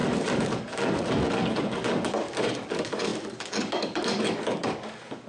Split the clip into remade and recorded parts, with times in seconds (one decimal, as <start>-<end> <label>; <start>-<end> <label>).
0.0-5.3 remade